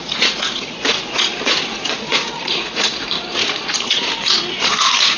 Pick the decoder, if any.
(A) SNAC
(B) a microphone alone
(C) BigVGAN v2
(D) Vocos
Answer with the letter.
D